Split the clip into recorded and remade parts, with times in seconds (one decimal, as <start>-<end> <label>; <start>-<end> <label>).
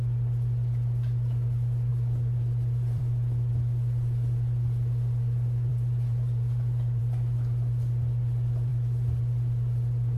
0.0-1.9 recorded; 1.9-3.0 remade; 3.0-5.7 recorded; 5.7-7.0 remade; 7.0-8.7 recorded; 8.7-10.2 remade